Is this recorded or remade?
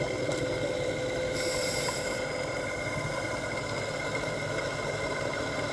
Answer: recorded